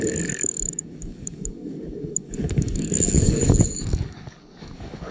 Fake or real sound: fake